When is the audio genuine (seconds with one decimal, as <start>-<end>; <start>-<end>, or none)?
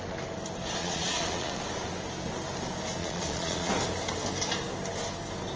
0.0-0.8; 1.6-3.0; 3.7-5.6